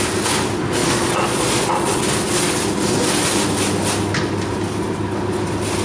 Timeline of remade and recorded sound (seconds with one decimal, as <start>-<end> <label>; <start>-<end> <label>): 0.0-0.8 recorded; 0.8-2.0 remade; 2.0-5.8 recorded